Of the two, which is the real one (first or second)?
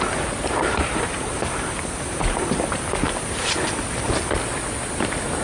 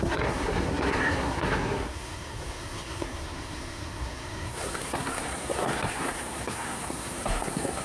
first